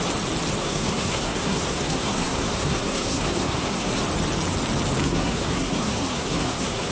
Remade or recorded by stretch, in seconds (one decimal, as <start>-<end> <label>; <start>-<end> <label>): 0.0-0.6 recorded; 0.6-4.0 remade; 4.0-5.0 recorded; 5.0-6.9 remade